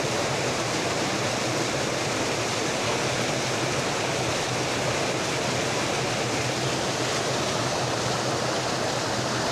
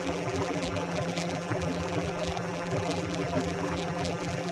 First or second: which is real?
first